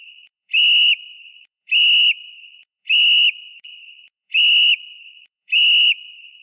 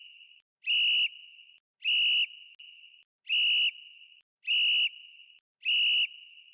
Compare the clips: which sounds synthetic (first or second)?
first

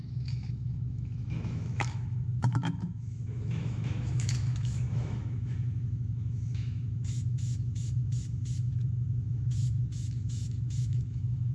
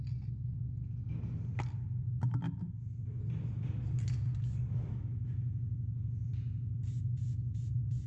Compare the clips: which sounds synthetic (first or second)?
first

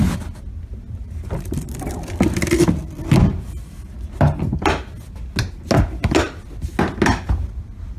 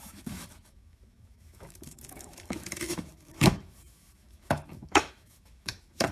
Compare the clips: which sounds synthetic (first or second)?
second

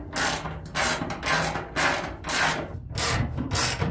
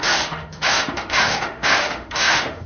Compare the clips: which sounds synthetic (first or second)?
second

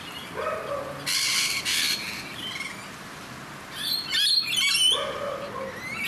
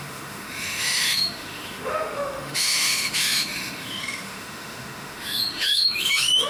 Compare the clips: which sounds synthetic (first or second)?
second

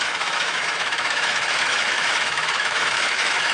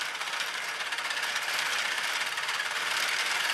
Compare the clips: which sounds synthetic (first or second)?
first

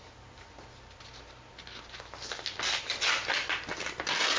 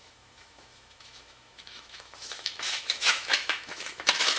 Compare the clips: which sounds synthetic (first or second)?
second